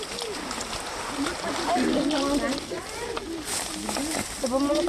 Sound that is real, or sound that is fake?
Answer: real